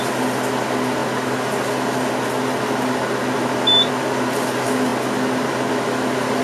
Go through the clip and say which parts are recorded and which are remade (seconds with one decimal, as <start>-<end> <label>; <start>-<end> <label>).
0.0-6.4 recorded